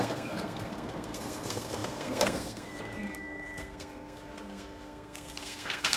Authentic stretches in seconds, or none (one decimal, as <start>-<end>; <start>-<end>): none